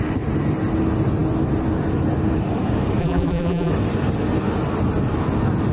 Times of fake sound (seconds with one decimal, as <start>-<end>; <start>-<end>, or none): 3.0-3.7